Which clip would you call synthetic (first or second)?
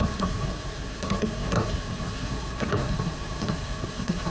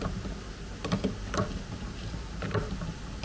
first